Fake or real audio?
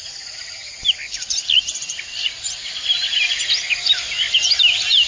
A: real